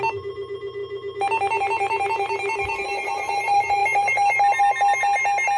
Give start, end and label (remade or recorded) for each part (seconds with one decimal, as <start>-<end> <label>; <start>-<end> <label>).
0.0-5.6 recorded